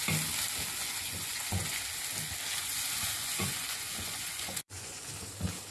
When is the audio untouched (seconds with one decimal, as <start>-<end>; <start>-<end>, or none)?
0.0-0.8; 1.8-2.5; 5.1-5.7